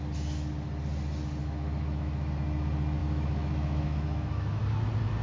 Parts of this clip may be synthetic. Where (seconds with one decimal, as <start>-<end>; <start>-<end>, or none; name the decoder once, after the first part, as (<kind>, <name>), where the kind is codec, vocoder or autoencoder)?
1.4-2.3 (autoencoder, DAC-VAE); 3.0-4.6